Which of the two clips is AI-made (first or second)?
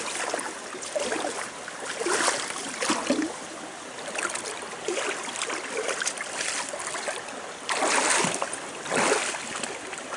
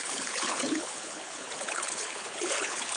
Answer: second